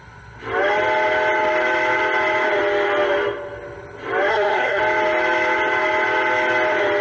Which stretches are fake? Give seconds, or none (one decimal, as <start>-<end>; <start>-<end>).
4.3-4.8